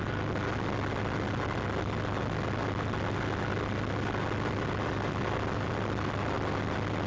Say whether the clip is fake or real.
real